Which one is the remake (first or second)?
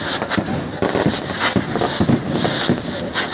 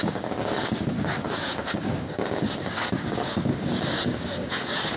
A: second